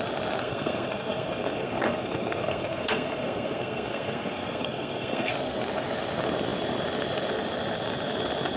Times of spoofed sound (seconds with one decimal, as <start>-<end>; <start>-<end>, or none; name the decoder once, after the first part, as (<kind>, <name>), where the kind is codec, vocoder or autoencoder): 0.4-5.3 (codec, SNAC)